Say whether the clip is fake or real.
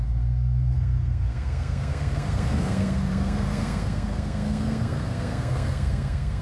fake